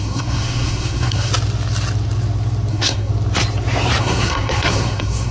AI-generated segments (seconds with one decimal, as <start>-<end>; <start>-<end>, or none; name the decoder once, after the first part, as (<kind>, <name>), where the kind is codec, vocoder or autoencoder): 0.0-1.3 (codec, SNAC); 2.7-3.1; 4.0-5.3